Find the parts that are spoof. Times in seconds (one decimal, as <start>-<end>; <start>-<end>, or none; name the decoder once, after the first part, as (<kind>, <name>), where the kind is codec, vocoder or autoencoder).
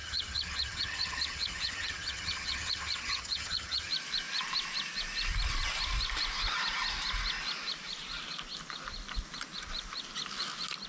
0.0-3.9 (vocoder, HiFi-GAN)